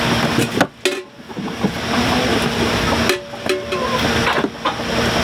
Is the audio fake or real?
real